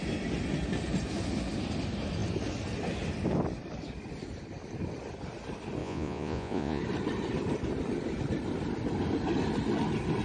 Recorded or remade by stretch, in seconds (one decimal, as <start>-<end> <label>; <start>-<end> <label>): 0.0-5.8 recorded; 5.8-6.8 remade; 6.8-10.2 recorded